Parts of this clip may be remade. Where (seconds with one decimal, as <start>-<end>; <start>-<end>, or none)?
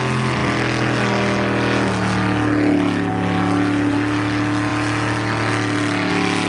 none